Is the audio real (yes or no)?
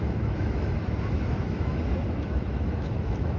no